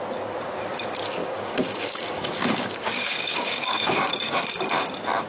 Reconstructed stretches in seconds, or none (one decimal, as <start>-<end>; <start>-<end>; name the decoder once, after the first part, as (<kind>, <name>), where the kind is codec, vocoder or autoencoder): 1.2-4.4 (codec, DAC)